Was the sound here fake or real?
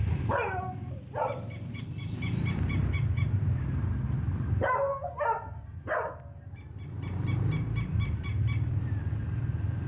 real